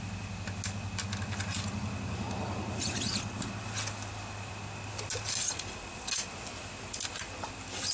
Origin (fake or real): real